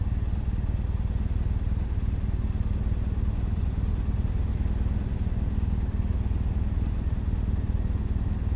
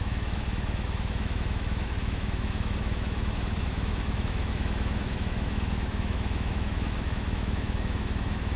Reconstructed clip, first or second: second